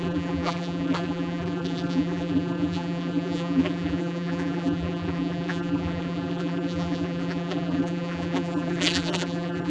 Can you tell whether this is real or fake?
fake